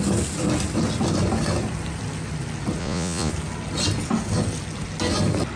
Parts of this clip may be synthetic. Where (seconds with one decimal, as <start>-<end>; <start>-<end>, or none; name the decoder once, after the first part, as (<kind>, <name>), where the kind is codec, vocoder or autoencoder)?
2.8-3.3 (vocoder, Vocos)